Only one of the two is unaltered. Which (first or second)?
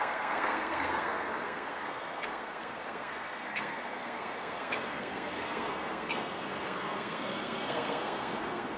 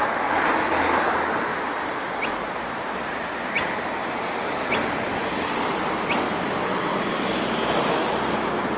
second